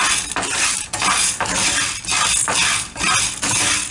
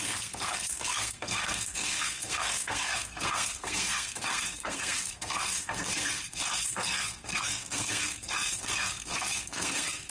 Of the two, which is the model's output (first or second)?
second